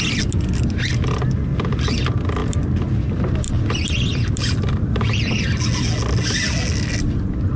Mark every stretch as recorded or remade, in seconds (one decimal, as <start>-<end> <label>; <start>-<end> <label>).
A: 0.0-4.1 recorded; 4.1-5.5 remade; 5.5-7.6 recorded